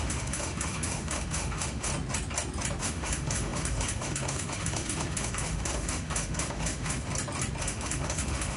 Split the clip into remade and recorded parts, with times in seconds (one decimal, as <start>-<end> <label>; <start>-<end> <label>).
0.0-1.9 remade; 1.9-2.8 recorded; 2.8-7.1 remade; 7.1-7.6 recorded; 7.6-8.6 remade

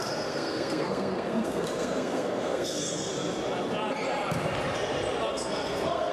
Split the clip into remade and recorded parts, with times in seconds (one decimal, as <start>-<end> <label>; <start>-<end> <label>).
0.0-3.1 remade; 3.1-5.3 recorded; 5.3-6.1 remade

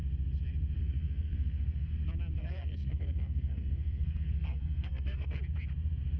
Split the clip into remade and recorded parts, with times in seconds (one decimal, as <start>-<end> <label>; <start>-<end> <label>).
0.0-0.8 recorded; 0.8-1.9 remade; 1.9-2.4 recorded; 2.4-5.4 remade; 5.4-6.2 recorded

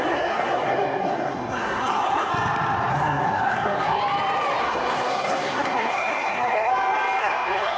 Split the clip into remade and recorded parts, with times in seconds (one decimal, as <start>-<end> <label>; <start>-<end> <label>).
0.0-2.3 remade; 2.3-2.9 recorded; 2.9-4.0 remade; 4.0-4.6 recorded; 4.6-6.7 remade; 6.7-7.2 recorded; 7.2-7.8 remade

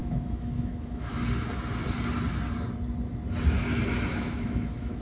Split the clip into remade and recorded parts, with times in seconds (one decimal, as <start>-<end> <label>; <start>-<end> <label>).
0.0-1.1 remade; 1.1-4.1 recorded; 4.1-5.0 remade

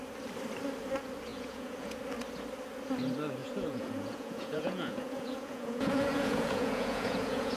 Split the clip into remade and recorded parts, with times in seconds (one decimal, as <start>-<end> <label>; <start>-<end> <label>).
0.0-1.3 recorded; 1.3-2.0 remade; 2.0-3.4 recorded; 3.4-7.6 remade

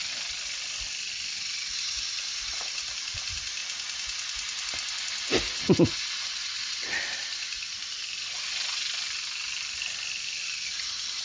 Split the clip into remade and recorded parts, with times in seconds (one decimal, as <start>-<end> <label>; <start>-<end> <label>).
0.0-3.6 remade; 3.6-6.6 recorded; 6.6-11.2 remade

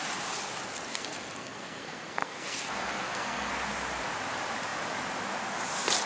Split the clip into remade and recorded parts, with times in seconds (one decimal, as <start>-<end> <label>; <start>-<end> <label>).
0.0-0.9 recorded; 0.9-3.5 remade; 3.5-6.1 recorded